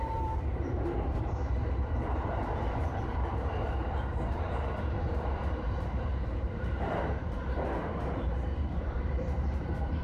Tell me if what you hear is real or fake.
fake